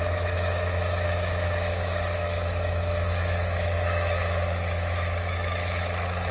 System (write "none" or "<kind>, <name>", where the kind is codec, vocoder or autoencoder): autoencoder, DAC-VAE